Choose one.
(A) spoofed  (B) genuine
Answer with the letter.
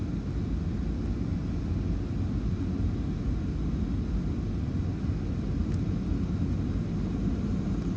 B